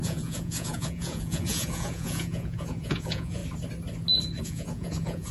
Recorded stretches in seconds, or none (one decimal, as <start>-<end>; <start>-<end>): 3.4-4.4